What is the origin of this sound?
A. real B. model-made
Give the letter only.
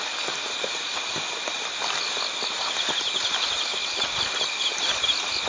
A